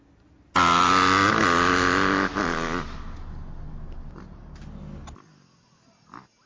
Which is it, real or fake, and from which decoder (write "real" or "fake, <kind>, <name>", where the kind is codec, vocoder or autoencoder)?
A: real